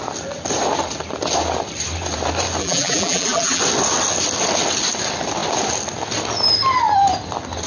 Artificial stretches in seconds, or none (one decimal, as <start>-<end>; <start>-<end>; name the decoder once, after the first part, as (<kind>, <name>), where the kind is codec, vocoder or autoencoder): 2.6-3.6 (vocoder, BigVGAN v2)